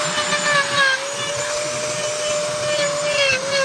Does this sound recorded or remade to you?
recorded